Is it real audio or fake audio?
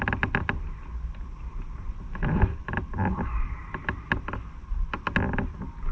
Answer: real